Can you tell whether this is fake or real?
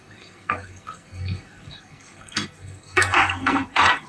fake